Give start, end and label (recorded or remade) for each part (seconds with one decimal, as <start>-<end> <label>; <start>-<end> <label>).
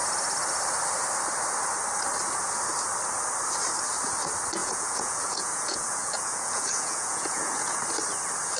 0.0-4.6 recorded; 4.6-7.8 remade; 7.8-8.6 recorded